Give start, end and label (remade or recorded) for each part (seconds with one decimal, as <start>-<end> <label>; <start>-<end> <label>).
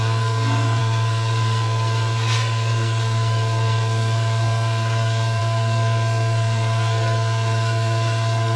0.0-8.6 remade